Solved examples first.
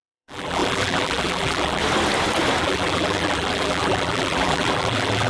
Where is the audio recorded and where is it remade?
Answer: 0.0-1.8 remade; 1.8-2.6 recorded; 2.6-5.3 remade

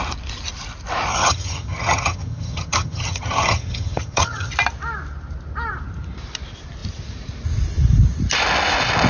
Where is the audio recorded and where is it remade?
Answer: 0.0-1.1 recorded; 1.1-4.5 remade; 4.5-9.1 recorded

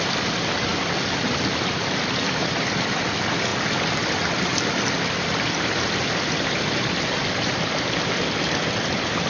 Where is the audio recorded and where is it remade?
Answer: 0.0-9.3 recorded